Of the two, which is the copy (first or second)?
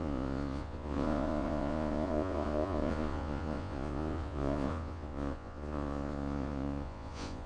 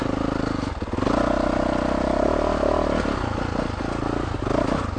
first